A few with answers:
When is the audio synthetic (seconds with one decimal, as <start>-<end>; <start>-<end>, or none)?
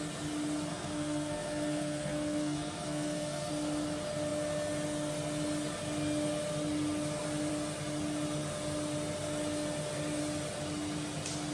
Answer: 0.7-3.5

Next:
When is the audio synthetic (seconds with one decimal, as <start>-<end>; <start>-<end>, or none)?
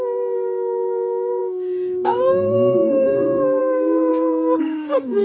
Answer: 0.0-4.1; 4.6-5.2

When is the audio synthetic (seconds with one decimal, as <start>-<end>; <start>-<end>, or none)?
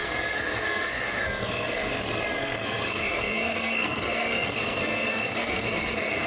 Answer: 0.0-1.9; 2.4-6.3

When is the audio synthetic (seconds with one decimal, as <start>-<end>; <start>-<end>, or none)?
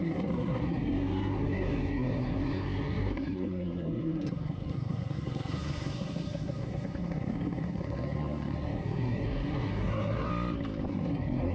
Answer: 0.0-10.3; 10.9-11.5